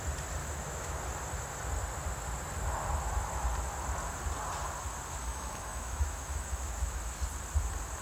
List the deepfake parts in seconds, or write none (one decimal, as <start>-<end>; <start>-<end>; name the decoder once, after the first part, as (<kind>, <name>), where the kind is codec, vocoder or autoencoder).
0.4-1.0 (autoencoder, DAC-VAE); 5.3-7.0